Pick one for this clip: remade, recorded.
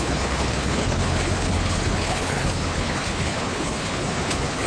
remade